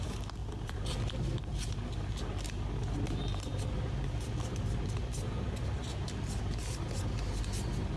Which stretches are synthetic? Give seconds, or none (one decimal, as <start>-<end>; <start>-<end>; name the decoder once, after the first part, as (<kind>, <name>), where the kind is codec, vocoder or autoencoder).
0.4-1.7 (vocoder, BigVGAN v2)